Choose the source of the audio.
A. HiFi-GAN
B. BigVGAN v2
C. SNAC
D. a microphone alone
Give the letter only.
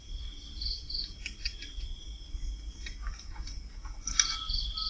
D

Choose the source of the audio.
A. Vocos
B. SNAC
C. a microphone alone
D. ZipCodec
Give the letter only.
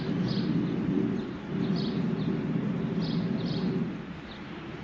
C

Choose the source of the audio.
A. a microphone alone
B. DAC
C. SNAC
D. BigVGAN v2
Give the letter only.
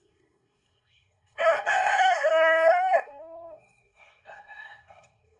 C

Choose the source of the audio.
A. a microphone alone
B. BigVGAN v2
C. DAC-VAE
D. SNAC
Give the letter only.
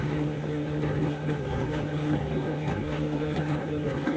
D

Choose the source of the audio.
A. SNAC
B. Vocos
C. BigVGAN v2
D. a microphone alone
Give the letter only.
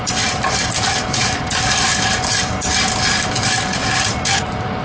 D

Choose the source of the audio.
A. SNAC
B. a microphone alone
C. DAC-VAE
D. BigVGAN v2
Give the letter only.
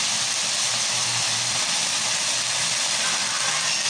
B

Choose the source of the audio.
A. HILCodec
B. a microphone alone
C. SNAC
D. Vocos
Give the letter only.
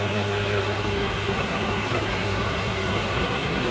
C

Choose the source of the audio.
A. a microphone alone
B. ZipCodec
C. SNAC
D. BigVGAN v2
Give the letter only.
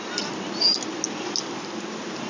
A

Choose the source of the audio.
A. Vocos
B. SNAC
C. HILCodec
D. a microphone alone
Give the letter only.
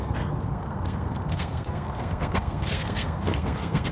B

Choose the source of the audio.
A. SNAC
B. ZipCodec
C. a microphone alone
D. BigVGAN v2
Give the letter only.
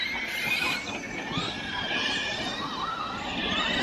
C